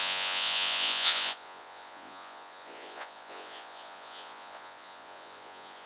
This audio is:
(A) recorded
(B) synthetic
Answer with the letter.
B